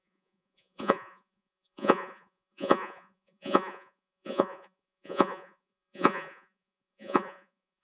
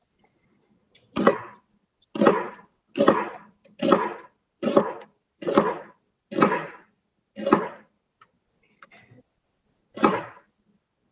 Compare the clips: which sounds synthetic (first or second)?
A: first